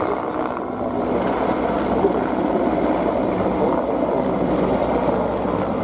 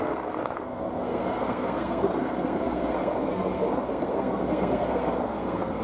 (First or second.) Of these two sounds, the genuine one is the first